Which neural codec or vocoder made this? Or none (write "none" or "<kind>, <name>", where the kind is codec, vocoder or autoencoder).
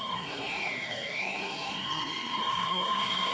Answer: codec, SNAC